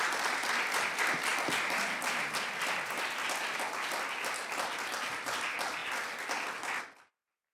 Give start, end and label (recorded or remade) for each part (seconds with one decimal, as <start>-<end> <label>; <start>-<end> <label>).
0.0-7.5 recorded

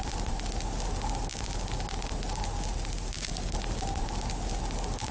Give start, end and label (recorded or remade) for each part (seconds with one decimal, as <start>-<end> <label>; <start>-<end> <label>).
0.0-5.1 recorded

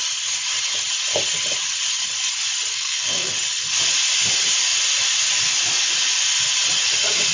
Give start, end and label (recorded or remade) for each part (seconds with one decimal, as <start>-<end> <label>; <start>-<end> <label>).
0.0-2.7 recorded; 2.7-3.3 remade; 3.3-7.3 recorded

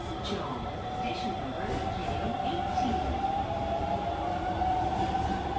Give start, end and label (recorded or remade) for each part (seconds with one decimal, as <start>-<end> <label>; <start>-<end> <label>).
0.0-0.5 recorded; 0.5-1.4 remade; 1.4-2.0 recorded; 2.0-5.6 remade

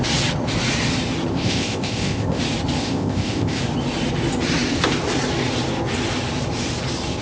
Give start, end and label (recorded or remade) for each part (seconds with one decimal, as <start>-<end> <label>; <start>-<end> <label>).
0.0-1.3 recorded; 1.3-2.4 remade; 2.4-2.8 recorded; 2.8-3.6 remade; 3.6-7.2 recorded